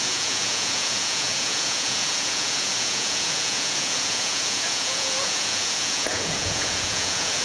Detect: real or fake fake